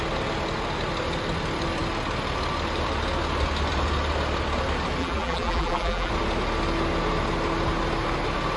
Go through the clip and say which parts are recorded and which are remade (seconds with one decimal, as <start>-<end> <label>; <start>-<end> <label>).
0.0-5.0 recorded; 5.0-6.1 remade; 6.1-8.6 recorded